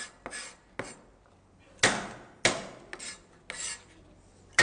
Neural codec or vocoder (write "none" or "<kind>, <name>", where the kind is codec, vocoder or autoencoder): none